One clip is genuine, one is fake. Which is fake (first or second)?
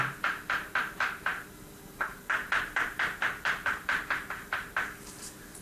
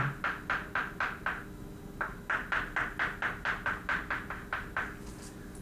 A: first